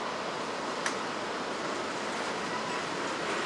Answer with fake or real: real